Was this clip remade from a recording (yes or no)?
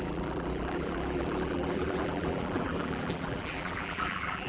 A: yes